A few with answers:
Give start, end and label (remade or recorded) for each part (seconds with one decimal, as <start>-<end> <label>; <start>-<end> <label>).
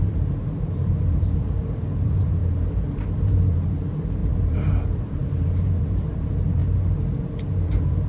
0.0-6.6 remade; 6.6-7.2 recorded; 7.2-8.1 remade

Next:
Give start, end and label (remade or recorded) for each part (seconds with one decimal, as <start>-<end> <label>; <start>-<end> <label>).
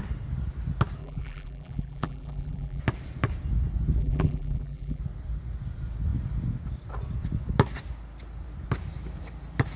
0.0-1.0 recorded; 1.0-2.8 remade; 2.8-4.0 recorded; 4.0-5.0 remade; 5.0-9.8 recorded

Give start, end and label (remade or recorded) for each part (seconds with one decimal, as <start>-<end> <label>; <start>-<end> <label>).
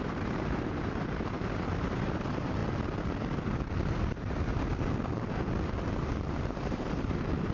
0.0-2.6 remade; 2.6-3.9 recorded; 3.9-4.7 remade; 4.7-6.0 recorded; 6.0-7.5 remade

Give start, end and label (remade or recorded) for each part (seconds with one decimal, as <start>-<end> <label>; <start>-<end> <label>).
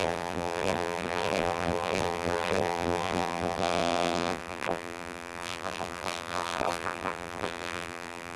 0.0-8.4 remade